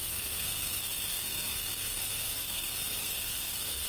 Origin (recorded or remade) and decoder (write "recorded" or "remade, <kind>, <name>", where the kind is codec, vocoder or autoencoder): remade, codec, SNAC